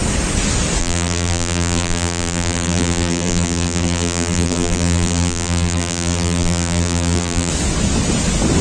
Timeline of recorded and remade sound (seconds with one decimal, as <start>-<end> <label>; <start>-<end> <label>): 0.0-0.8 recorded; 0.8-7.5 remade; 7.5-8.6 recorded